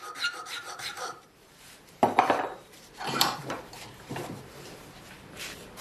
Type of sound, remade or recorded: remade